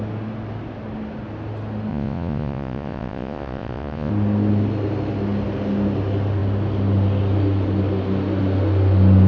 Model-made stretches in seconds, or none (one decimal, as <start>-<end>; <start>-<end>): 1.9-4.1